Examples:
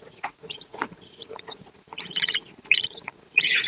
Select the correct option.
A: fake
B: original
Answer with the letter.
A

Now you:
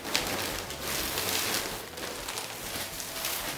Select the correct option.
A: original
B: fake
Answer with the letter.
A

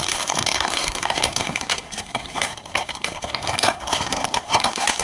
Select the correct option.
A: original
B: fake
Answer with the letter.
B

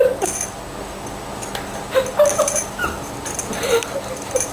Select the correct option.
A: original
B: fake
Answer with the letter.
A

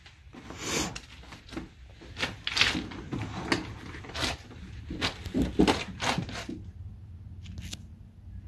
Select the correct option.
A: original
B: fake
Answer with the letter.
A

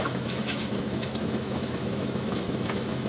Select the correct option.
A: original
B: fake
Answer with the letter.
B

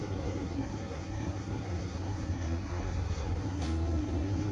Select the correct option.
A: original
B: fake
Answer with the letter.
B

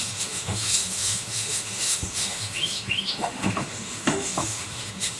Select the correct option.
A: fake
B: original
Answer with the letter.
A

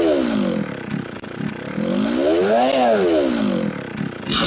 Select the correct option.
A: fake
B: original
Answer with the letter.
B